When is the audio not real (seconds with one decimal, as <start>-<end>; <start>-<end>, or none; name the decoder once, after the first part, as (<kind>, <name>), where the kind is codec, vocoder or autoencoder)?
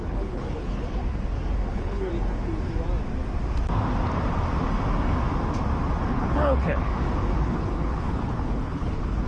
0.0-1.0 (codec, HILCodec); 1.7-2.1; 6.1-6.9; 7.4-9.3